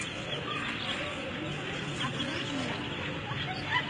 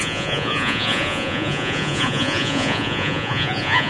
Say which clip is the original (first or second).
first